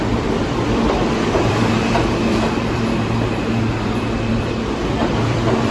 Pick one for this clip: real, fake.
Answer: fake